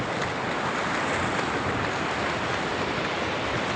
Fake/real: real